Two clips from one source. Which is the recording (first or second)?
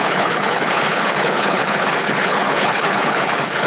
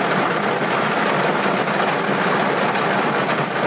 second